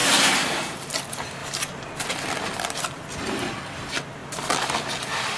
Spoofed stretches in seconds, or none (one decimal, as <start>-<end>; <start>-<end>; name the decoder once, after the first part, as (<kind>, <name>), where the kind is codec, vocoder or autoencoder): 0.0-0.9 (vocoder, BigVGAN v2); 4.2-5.4